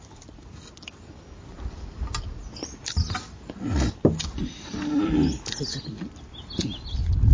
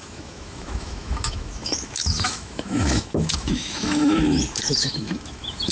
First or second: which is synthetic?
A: second